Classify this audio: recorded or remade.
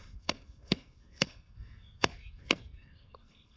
remade